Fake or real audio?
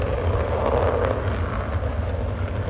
real